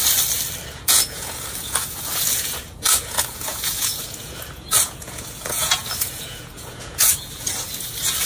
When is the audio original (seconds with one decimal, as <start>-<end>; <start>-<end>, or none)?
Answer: 0.0-0.7